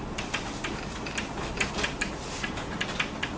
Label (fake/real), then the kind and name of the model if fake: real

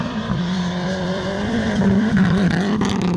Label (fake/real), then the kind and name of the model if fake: fake, vocoder, BigVGAN v2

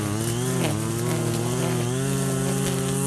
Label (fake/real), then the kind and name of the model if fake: real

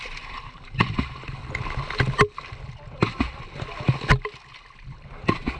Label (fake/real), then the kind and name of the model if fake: real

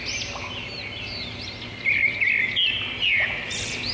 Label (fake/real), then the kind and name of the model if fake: real